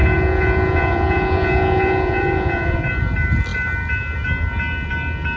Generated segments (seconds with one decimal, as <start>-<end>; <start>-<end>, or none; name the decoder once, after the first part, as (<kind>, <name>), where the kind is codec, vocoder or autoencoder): 0.0-2.9 (vocoder, Vocos)